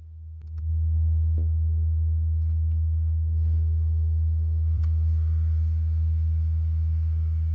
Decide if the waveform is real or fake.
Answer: fake